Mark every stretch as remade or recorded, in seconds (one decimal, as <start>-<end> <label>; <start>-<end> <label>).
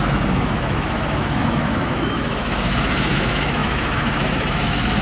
0.0-5.0 remade